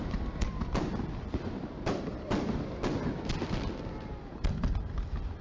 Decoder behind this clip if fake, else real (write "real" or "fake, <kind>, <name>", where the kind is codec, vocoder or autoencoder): fake, vocoder, BigVGAN v2